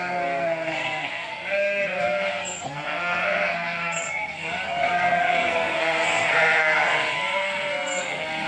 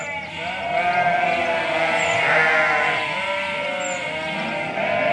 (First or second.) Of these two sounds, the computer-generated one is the first